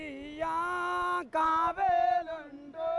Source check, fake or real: real